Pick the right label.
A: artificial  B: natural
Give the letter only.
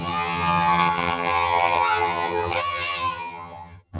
A